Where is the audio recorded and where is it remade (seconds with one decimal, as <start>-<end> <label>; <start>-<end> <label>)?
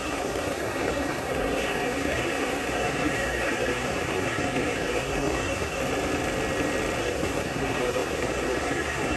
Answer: 0.0-5.8 remade; 5.8-7.0 recorded; 7.0-9.2 remade